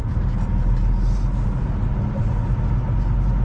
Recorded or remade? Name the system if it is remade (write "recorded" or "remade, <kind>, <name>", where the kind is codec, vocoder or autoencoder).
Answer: recorded